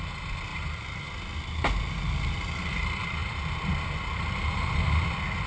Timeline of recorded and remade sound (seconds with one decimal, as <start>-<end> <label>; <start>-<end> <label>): 0.0-5.5 recorded